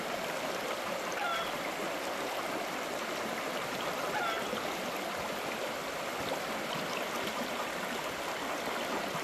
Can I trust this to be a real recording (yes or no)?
yes